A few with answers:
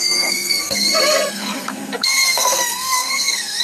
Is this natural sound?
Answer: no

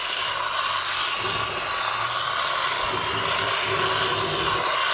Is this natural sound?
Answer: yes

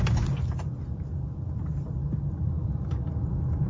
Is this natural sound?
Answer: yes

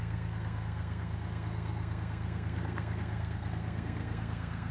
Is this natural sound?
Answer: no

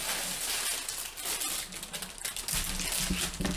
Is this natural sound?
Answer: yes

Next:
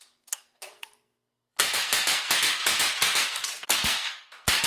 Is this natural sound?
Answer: no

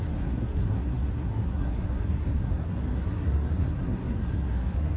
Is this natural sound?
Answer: no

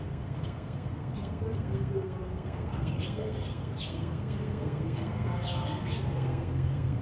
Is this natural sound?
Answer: no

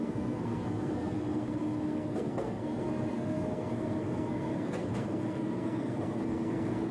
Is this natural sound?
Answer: no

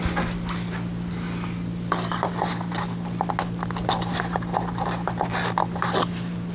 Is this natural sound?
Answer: yes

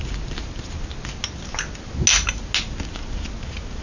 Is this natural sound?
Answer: yes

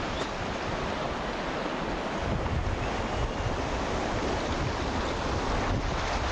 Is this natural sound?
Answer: yes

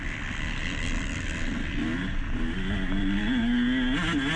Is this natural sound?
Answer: yes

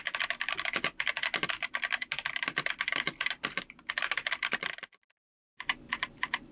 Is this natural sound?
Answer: yes